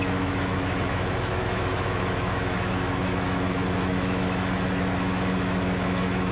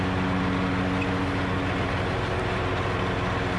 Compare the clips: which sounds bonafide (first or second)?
second